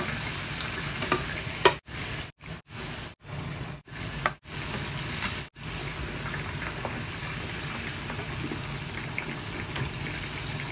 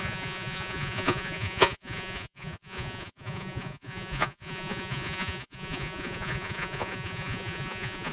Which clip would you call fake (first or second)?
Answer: second